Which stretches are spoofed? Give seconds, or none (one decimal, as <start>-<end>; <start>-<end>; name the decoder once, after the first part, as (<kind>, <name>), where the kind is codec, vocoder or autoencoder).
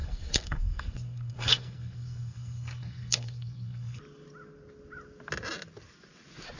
0.0-4.0 (codec, SNAC)